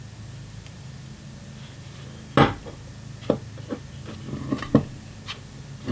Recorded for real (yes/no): yes